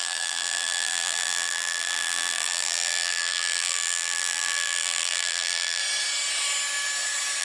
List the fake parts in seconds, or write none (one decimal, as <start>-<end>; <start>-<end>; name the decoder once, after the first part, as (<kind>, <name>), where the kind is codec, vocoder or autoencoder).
0.0-5.8 (vocoder, BigVGAN v2)